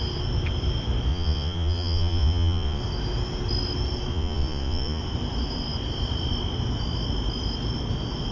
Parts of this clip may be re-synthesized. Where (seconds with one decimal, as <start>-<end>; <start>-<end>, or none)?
1.1-2.8; 4.1-5.0